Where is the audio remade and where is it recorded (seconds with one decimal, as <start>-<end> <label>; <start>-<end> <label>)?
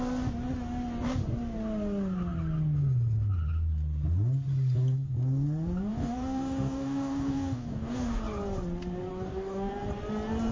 0.0-5.9 recorded; 5.9-8.2 remade; 8.2-9.1 recorded; 9.1-9.7 remade; 9.7-10.5 recorded